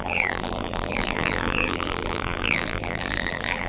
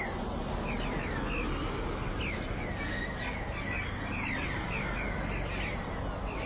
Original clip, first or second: second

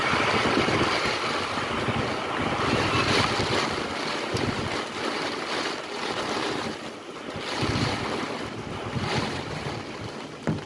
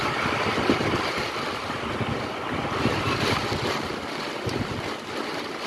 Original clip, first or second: first